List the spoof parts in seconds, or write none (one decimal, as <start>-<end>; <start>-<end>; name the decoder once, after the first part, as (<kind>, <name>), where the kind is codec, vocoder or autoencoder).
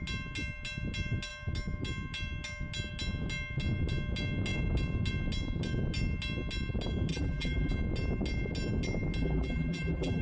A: 7.1-7.7 (vocoder, BigVGAN v2); 9.2-10.2